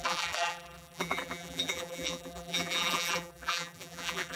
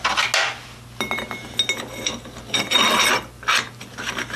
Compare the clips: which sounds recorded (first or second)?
second